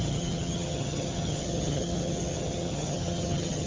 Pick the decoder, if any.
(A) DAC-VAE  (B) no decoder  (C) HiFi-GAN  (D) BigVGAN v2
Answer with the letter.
C